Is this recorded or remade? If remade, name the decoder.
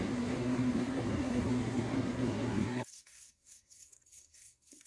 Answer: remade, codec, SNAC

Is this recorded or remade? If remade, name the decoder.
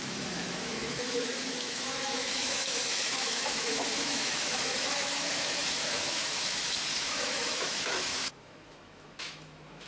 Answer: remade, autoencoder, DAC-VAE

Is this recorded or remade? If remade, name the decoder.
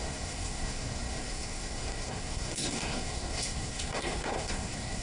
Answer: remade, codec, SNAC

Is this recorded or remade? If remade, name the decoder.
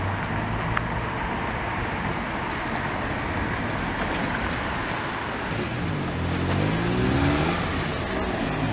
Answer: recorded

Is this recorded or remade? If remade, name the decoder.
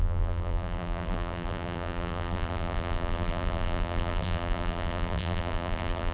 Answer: remade, vocoder, BigVGAN v2